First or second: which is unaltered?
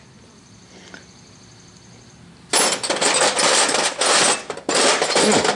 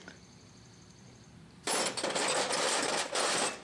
first